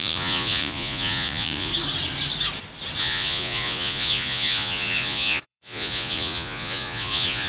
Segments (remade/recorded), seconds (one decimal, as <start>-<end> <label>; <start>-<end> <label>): 0.0-1.7 remade; 1.7-3.0 recorded; 3.0-7.5 remade